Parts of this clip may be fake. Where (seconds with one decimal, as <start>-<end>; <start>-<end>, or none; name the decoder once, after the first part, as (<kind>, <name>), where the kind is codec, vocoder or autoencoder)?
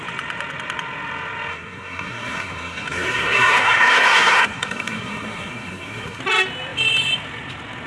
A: 1.5-6.2 (codec, SNAC)